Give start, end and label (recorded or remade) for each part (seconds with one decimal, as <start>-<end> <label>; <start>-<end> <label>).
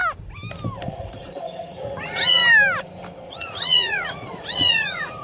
0.0-0.9 recorded; 0.9-2.4 remade; 2.4-3.3 recorded; 3.3-5.2 remade